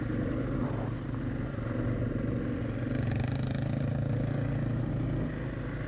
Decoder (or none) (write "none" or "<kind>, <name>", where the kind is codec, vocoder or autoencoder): none